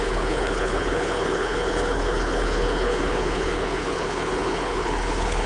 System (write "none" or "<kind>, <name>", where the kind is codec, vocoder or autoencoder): codec, HILCodec